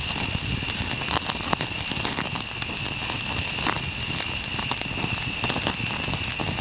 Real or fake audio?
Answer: real